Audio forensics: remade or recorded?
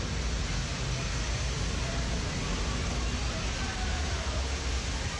recorded